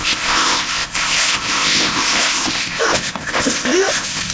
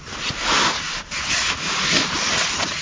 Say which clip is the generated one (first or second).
first